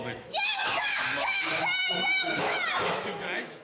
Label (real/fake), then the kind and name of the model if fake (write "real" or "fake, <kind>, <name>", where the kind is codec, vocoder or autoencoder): fake, autoencoder, DAC-VAE